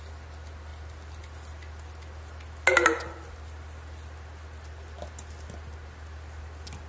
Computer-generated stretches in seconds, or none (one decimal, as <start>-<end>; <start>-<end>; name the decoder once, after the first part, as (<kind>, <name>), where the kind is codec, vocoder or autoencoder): none